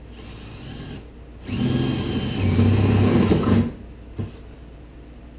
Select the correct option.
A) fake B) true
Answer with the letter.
B